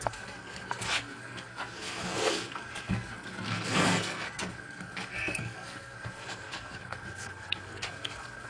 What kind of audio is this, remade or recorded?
remade